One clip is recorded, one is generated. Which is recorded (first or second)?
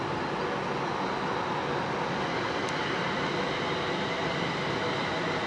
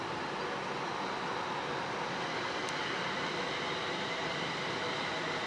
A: first